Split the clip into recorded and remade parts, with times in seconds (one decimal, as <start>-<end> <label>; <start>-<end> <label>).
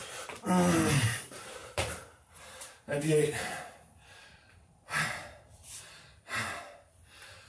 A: 0.0-1.0 recorded; 1.0-5.6 remade; 5.6-7.5 recorded